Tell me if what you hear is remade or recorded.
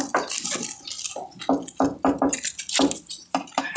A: recorded